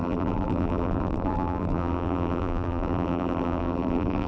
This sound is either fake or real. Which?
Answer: fake